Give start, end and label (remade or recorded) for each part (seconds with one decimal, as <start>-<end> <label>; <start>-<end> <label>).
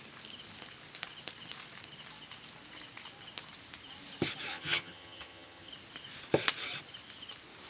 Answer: 0.0-4.5 recorded; 4.5-5.7 remade; 5.7-7.7 recorded